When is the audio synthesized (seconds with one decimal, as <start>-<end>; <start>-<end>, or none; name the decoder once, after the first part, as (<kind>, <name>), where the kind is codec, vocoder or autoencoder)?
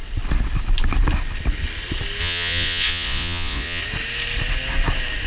2.2-3.8 (vocoder, Vocos)